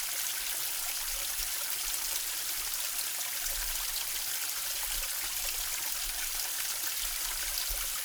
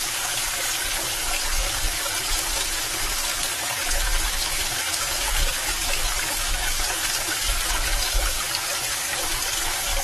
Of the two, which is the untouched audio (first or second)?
first